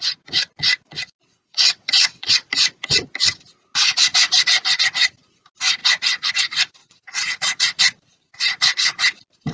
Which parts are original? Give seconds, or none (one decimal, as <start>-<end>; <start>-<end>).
0.0-1.2; 2.5-6.8; 7.8-9.5